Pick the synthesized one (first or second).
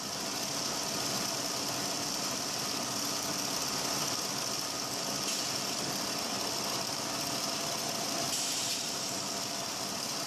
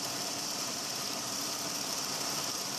second